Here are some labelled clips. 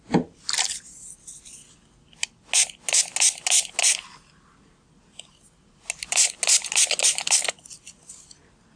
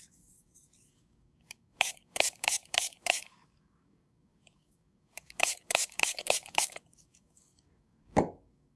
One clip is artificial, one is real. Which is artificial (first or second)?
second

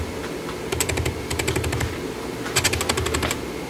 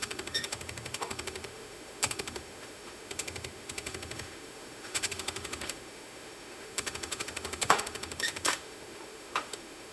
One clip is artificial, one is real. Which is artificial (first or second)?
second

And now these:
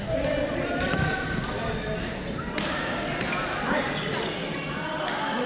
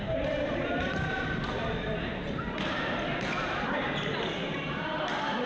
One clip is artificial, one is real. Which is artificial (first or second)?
second